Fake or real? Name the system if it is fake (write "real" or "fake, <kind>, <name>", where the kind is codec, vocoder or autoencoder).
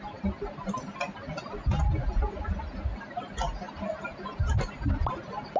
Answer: real